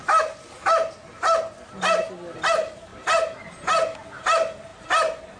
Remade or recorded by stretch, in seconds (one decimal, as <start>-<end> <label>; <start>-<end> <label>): 0.0-5.4 recorded